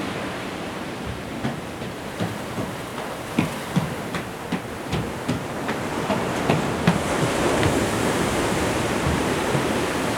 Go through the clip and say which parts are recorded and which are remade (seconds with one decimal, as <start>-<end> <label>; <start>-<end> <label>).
0.0-2.9 remade; 2.9-4.9 recorded; 4.9-10.2 remade